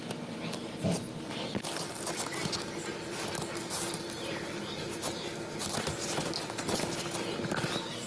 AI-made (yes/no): no